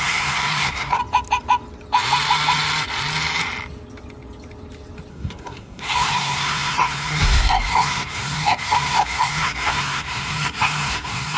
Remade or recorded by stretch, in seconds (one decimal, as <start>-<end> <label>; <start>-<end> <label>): 0.0-1.0 remade; 1.0-5.1 recorded; 5.1-11.4 remade